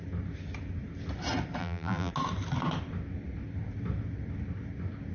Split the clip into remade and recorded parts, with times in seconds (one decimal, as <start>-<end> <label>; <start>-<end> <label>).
0.0-1.6 recorded; 1.6-2.1 remade; 2.1-5.1 recorded